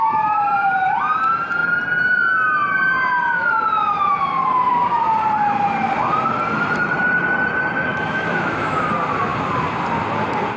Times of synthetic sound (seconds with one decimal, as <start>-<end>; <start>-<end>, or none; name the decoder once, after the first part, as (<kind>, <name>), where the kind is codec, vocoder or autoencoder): 7.9-8.9 (autoencoder, DAC-VAE)